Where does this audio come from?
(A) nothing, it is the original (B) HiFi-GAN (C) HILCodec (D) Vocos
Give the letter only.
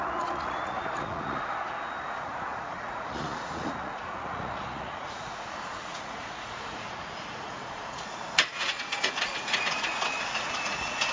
D